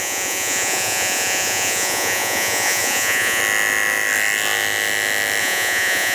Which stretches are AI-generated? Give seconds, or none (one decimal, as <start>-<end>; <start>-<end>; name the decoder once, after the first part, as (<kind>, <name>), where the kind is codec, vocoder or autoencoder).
0.0-3.4 (vocoder, Vocos); 5.4-6.1